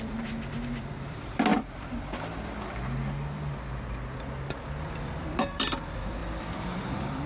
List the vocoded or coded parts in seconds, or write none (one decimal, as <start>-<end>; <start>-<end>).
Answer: 0.0-1.5; 4.8-7.3